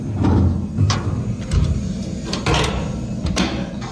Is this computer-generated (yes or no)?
no